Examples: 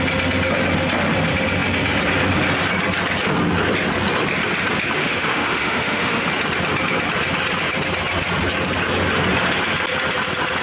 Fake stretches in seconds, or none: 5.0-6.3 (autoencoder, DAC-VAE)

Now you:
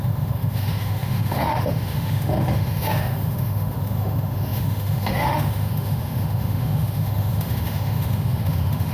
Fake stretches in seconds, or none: 0.0-8.9 (autoencoder, DAC-VAE)

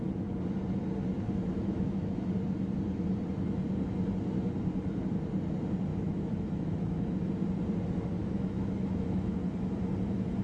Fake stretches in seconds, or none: 1.5-2.3 (autoencoder, DAC-VAE); 5.9-7.1; 8.2-9.4